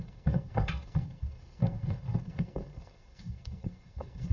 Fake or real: fake